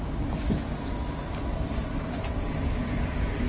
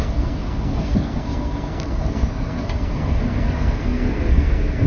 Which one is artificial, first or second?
second